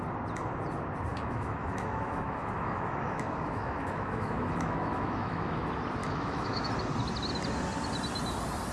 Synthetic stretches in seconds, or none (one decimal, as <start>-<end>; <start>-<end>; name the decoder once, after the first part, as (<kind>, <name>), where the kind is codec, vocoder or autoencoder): 1.1-5.6 (autoencoder, DAC-VAE); 6.0-6.7